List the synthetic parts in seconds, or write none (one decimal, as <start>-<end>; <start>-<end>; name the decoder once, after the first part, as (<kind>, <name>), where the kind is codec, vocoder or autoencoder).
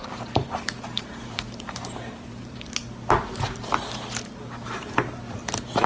0.0-2.7 (vocoder, BigVGAN v2)